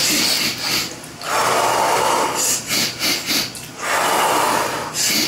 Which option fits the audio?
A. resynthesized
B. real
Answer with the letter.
B